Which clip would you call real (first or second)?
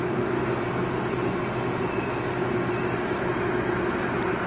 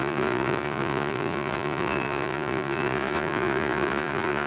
first